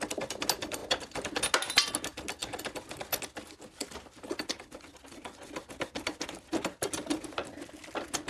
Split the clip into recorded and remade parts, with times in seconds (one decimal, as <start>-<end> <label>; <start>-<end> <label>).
0.0-8.3 recorded